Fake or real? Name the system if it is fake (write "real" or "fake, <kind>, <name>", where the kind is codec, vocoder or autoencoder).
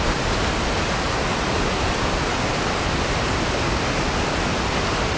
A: real